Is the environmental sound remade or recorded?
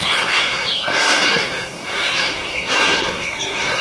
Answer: remade